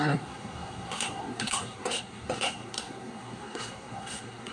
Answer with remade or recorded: remade